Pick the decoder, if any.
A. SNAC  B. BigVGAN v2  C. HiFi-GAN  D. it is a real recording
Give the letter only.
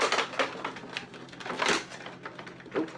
D